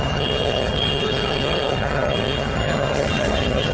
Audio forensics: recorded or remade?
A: remade